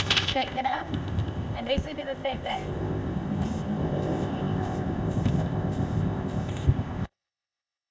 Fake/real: fake